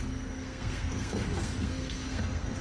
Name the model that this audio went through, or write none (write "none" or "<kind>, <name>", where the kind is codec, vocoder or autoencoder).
codec, SNAC